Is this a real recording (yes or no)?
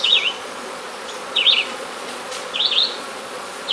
no